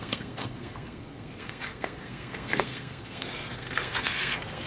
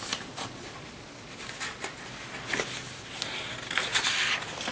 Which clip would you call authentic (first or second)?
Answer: second